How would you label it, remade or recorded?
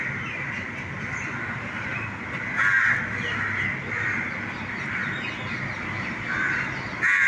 recorded